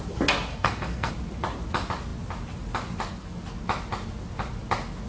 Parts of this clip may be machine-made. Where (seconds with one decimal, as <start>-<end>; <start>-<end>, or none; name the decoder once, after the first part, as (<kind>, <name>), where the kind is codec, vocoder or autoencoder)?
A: 0.5-1.1 (codec, SNAC)